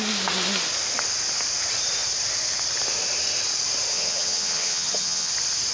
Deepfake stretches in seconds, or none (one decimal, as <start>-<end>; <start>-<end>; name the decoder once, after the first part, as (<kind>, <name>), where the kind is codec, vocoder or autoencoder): 3.9-5.3 (vocoder, HiFi-GAN)